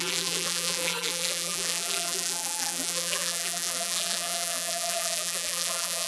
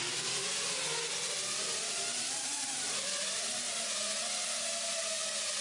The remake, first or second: first